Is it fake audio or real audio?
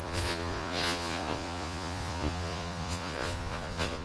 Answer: fake